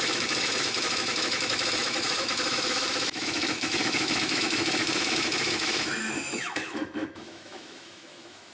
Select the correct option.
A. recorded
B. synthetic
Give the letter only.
B